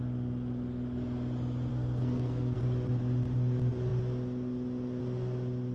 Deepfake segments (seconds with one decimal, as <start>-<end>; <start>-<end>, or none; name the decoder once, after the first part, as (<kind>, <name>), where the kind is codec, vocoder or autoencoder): 1.7-2.6 (codec, SNAC)